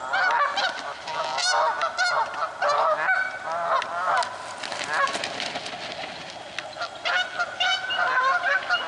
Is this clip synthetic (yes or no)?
no